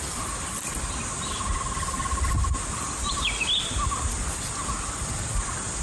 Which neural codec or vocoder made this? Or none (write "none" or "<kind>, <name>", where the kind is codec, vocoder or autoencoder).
none